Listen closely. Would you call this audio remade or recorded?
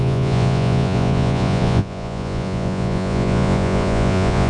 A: remade